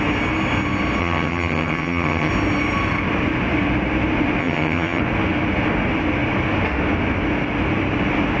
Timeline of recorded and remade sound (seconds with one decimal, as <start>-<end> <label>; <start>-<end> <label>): 0.0-1.0 recorded; 1.0-2.3 remade; 2.3-4.4 recorded; 4.4-5.0 remade; 5.0-8.4 recorded